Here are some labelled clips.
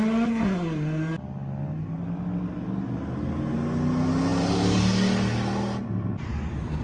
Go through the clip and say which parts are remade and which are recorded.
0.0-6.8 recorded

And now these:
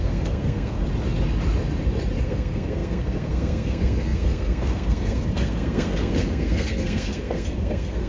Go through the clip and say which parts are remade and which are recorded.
0.0-0.8 remade; 0.8-2.2 recorded; 2.2-8.1 remade

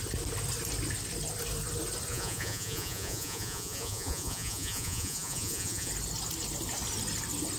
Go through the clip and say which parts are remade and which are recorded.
0.0-2.1 recorded; 2.1-5.9 remade; 5.9-7.6 recorded

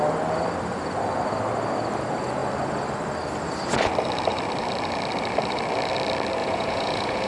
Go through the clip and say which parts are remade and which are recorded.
0.0-6.4 recorded; 6.4-7.3 remade

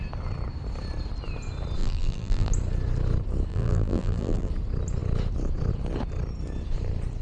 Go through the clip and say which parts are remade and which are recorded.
0.0-1.8 recorded; 1.8-2.5 remade; 2.5-3.5 recorded; 3.5-4.5 remade; 4.5-7.2 recorded

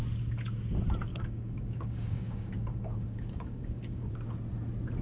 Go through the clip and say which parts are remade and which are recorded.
0.0-1.1 recorded; 1.1-4.1 remade; 4.1-5.0 recorded

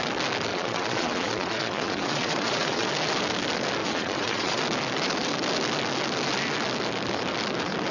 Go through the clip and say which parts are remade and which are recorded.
0.0-0.5 recorded; 0.5-2.9 remade; 2.9-3.8 recorded; 3.8-4.6 remade; 4.6-7.9 recorded

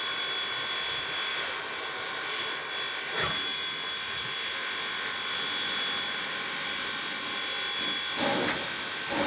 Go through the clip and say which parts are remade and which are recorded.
0.0-1.3 recorded; 1.3-2.6 remade; 2.6-9.3 recorded